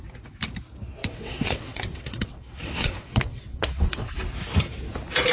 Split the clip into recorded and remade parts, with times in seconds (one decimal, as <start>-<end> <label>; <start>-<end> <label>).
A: 0.0-1.0 recorded; 1.0-4.2 remade; 4.2-5.3 recorded